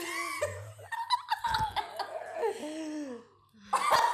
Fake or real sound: real